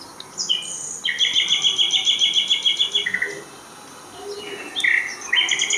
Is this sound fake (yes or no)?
no